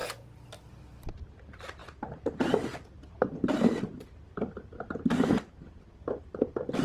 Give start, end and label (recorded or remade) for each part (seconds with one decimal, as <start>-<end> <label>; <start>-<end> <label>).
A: 0.0-0.8 recorded; 0.8-6.8 remade